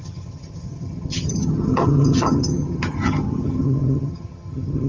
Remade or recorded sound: remade